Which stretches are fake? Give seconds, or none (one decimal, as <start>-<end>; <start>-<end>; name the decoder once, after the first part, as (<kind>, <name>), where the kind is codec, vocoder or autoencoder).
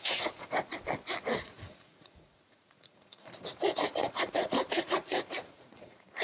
0.0-0.7 (vocoder, Vocos); 1.4-6.2